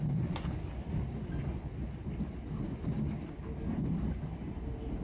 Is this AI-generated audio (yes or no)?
no